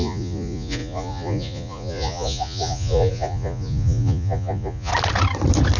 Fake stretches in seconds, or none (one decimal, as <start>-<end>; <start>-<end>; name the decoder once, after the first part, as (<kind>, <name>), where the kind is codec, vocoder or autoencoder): 0.0-4.9 (vocoder, Vocos)